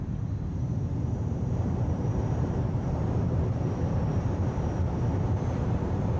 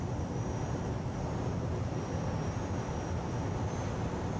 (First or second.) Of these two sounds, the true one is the second